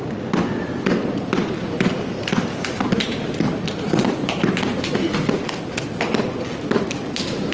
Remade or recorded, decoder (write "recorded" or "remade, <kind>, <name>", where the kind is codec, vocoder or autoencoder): recorded